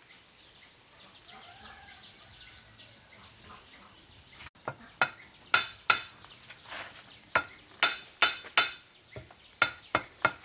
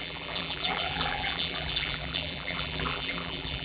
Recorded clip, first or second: first